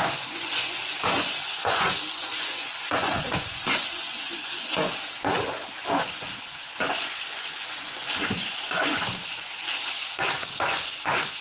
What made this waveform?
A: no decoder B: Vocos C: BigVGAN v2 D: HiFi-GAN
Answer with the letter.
B